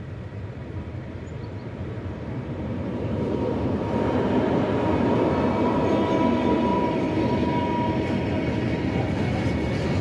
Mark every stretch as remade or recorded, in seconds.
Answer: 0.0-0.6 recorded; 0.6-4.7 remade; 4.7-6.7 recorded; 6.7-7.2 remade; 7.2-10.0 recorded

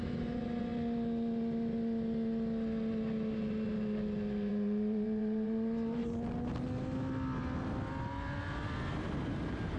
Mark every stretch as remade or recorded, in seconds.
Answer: 0.0-0.7 remade; 0.7-4.5 recorded; 4.5-6.0 remade; 6.0-9.0 recorded; 9.0-9.8 remade

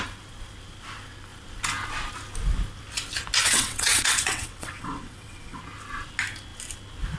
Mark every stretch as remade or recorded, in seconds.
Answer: 0.0-3.4 recorded; 3.4-5.6 remade; 5.6-7.2 recorded

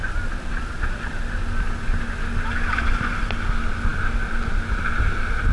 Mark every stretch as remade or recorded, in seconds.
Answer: 0.0-5.5 recorded

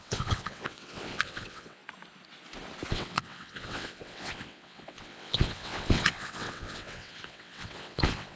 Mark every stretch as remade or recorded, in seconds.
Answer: 0.0-1.8 remade; 1.8-2.9 recorded; 2.9-8.4 remade